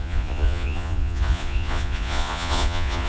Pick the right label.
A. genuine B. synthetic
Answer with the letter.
B